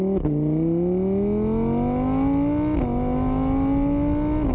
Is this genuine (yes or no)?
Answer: yes